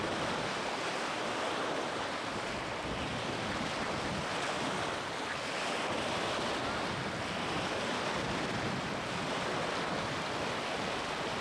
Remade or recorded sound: recorded